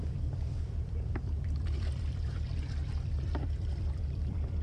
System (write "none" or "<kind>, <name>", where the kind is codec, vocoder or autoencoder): none